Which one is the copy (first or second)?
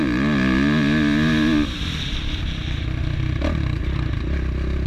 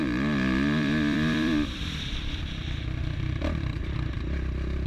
second